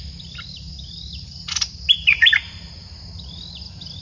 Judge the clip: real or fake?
real